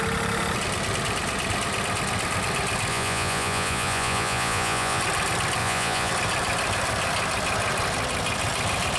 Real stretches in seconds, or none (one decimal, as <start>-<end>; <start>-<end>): 0.0-2.9; 5.0-5.6; 6.1-9.0